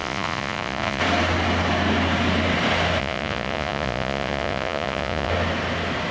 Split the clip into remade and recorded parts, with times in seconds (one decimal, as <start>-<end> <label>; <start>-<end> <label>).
0.0-1.0 remade; 1.0-3.0 recorded; 3.0-5.3 remade; 5.3-6.1 recorded